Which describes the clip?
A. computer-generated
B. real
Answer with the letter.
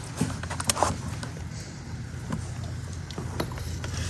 B